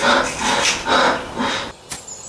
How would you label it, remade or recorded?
recorded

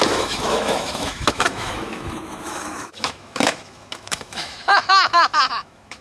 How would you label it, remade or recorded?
remade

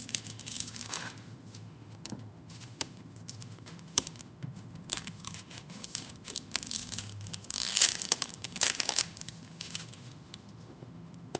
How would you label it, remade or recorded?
remade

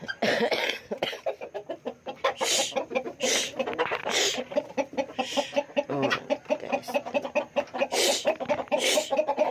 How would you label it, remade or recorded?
recorded